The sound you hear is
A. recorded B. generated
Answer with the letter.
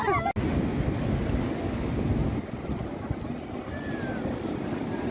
A